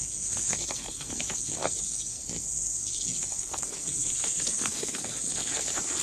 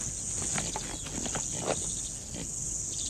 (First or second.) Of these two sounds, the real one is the second